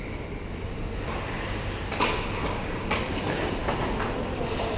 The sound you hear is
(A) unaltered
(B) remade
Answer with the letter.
A